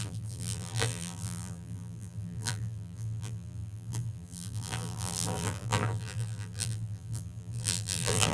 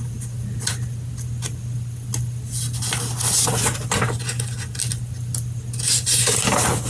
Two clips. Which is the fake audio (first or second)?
first